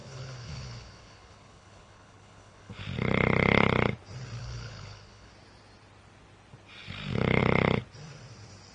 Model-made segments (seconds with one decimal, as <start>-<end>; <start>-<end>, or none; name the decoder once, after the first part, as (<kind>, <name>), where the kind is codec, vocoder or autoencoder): 0.0-2.8 (codec, HILCodec); 4.4-5.3